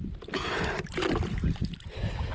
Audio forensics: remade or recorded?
recorded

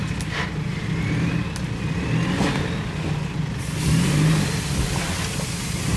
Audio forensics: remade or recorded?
recorded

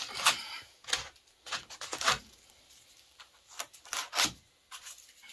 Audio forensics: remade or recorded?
recorded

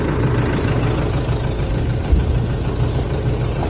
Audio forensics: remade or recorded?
recorded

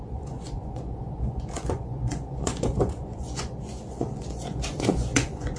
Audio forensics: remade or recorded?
remade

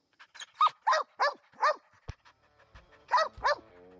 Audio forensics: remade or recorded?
recorded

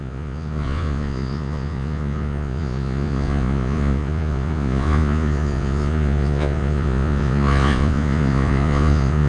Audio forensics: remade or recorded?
remade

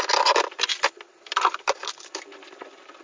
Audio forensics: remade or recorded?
remade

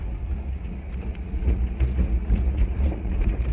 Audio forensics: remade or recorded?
remade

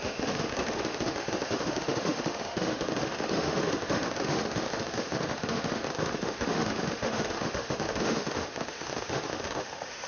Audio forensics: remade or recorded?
remade